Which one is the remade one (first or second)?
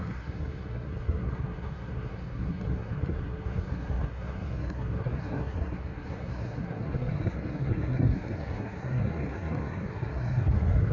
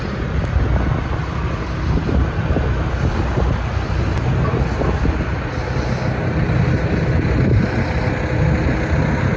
first